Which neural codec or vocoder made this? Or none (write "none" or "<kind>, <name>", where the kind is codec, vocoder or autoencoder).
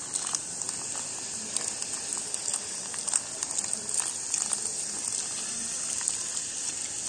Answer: none